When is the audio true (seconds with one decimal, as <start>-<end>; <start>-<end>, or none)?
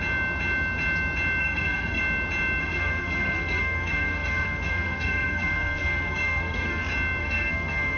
0.0-1.4; 2.0-2.6; 6.8-7.2